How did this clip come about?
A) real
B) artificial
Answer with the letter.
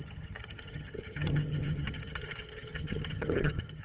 B